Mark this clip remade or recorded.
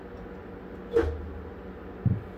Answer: recorded